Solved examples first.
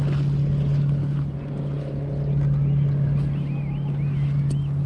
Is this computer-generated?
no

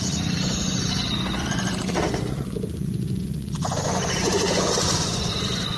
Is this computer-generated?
yes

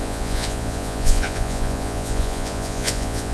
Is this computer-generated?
yes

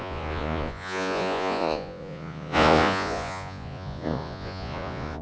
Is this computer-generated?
yes